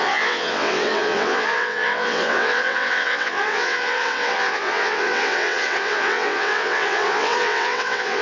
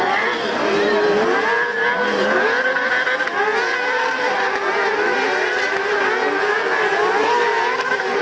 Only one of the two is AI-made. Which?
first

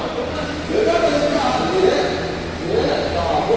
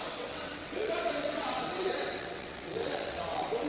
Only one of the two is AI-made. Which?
second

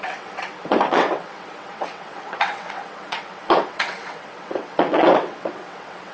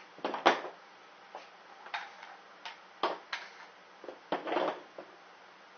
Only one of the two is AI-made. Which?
first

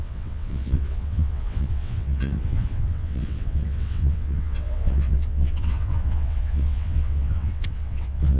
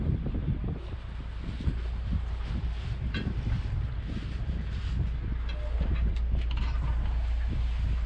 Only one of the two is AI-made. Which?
first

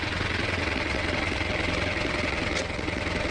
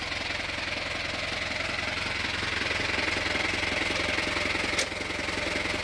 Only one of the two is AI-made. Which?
first